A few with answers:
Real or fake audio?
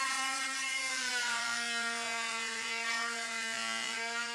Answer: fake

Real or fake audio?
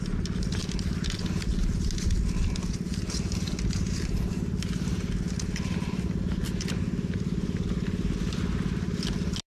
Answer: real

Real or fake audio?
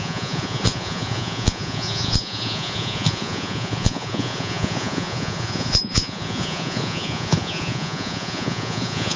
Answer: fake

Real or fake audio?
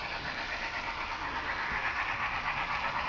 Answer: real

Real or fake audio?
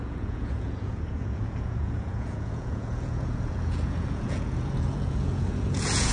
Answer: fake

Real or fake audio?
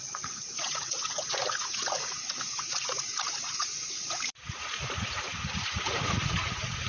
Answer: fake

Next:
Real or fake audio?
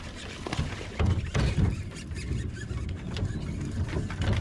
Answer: real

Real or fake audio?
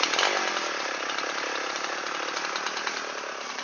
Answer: real